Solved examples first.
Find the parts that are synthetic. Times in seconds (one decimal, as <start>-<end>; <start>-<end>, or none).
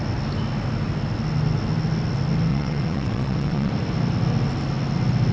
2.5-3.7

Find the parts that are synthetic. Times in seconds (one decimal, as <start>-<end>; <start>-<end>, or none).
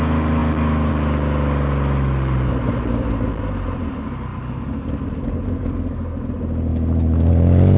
none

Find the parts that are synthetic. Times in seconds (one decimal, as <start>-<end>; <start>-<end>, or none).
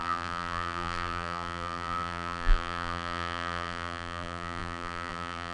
0.0-5.5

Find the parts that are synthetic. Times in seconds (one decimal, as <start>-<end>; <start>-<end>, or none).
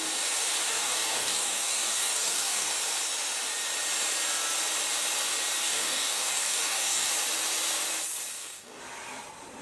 0.7-2.7; 5.6-7.1; 8.3-8.8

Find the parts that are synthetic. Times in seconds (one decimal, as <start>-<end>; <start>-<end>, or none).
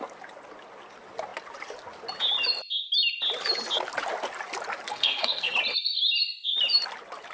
4.9-5.5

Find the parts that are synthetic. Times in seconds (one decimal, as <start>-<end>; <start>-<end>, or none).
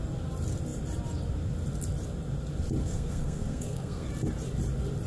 2.8-4.1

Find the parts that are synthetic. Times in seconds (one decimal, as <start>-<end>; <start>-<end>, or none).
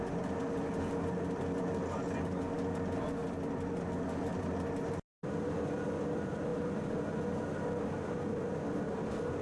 none